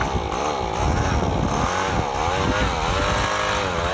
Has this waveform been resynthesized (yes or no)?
no